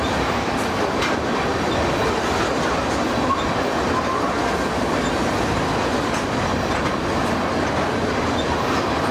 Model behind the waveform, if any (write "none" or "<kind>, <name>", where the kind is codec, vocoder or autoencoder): none